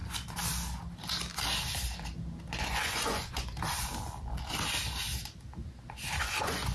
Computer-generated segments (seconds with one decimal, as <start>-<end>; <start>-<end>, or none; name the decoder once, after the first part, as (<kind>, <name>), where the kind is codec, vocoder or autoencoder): 2.5-3.5 (vocoder, Vocos); 6.2-6.7